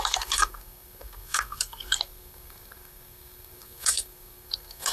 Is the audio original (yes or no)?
no